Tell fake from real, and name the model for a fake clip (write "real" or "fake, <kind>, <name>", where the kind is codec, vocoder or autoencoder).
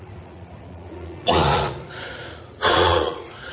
fake, vocoder, Vocos